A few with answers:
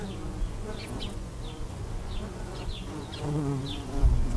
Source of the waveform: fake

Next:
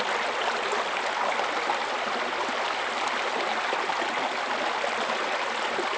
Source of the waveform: real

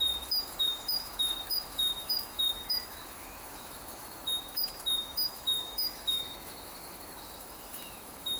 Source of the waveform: fake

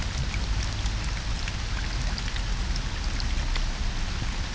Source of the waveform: real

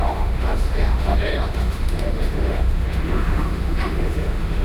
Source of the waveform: fake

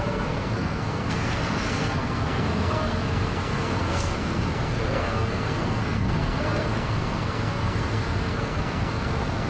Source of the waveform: fake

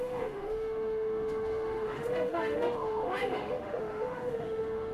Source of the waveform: fake